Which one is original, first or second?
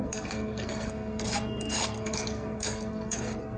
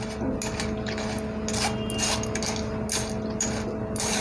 second